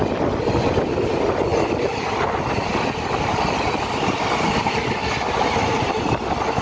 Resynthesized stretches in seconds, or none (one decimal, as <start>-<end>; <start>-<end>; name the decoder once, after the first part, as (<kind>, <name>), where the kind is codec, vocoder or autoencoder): none